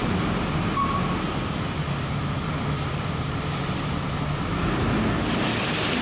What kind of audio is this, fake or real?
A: fake